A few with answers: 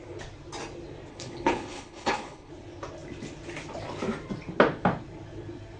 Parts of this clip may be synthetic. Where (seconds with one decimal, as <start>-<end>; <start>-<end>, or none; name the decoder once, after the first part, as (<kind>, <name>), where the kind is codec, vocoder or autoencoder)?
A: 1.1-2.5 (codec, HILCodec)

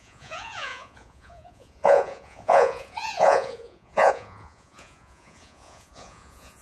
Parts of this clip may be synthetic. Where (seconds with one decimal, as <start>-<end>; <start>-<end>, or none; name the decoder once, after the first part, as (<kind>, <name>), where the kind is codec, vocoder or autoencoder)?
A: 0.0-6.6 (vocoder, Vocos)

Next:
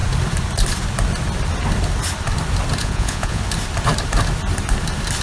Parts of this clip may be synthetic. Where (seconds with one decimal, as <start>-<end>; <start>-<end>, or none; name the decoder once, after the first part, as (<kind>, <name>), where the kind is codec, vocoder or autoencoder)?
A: 2.8-3.4 (vocoder, Vocos)